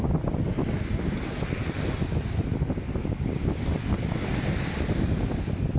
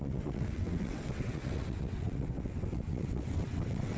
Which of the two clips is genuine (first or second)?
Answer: first